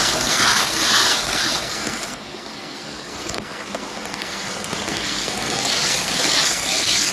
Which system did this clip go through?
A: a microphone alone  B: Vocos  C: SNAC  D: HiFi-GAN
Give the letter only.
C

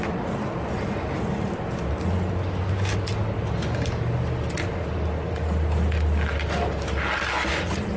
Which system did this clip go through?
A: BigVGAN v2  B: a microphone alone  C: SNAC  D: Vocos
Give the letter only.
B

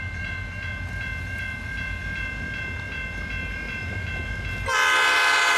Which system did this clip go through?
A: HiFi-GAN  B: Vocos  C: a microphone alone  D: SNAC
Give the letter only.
C